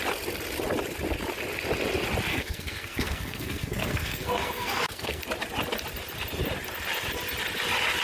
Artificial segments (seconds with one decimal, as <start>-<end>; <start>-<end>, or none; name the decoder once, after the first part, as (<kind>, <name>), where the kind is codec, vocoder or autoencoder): 2.3-5.2 (codec, SNAC)